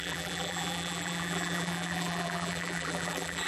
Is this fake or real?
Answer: fake